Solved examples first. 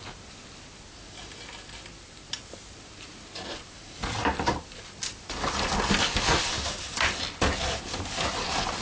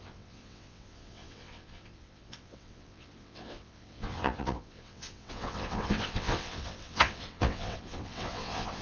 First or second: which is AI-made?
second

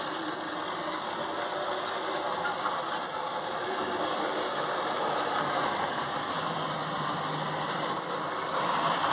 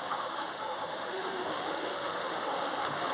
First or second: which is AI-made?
second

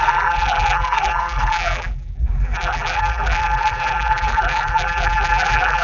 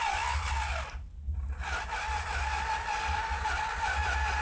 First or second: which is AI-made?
first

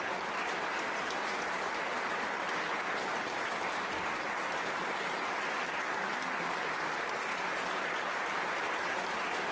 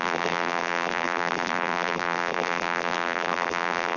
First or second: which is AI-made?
second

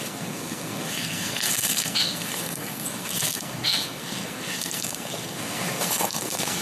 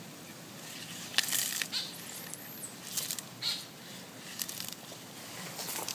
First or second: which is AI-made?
first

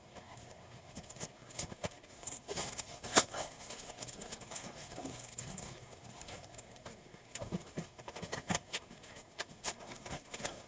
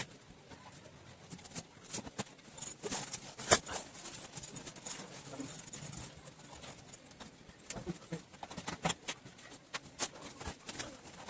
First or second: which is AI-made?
first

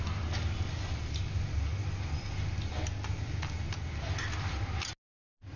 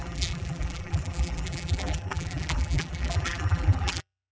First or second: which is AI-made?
second